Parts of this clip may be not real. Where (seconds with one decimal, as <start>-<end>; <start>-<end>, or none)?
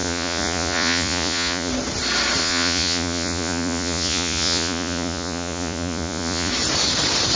0.0-1.7; 2.4-6.5